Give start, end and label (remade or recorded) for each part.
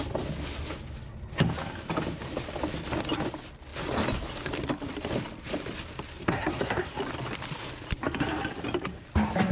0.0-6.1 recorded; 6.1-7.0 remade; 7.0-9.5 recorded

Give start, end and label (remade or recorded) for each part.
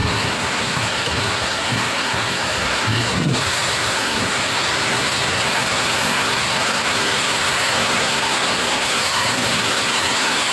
0.0-10.5 remade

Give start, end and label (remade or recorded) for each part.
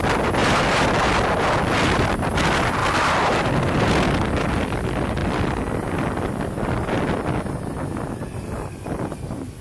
0.0-9.6 recorded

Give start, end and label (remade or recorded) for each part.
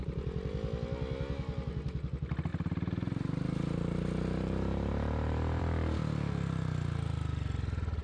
0.0-2.5 recorded; 2.5-5.6 remade; 5.6-8.0 recorded